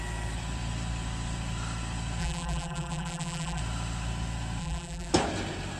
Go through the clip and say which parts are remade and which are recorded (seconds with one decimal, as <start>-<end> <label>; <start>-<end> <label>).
0.0-2.2 recorded; 2.2-3.6 remade; 3.6-4.6 recorded; 4.6-5.1 remade; 5.1-5.8 recorded